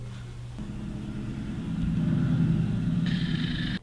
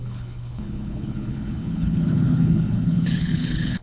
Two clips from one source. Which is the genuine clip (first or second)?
first